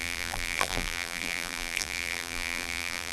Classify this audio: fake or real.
fake